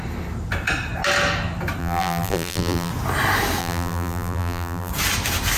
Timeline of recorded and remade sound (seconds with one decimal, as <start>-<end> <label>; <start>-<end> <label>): 0.0-1.8 recorded; 1.8-2.9 remade; 2.9-3.6 recorded; 3.6-4.9 remade; 4.9-5.6 recorded